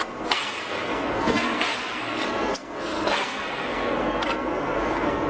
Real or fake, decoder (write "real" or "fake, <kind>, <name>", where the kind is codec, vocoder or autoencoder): fake, codec, SNAC